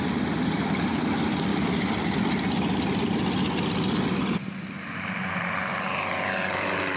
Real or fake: real